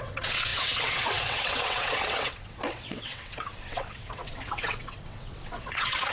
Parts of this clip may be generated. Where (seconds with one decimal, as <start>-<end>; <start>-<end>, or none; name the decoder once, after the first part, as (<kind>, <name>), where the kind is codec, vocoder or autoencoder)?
0.0-6.1 (vocoder, WaveNeXt)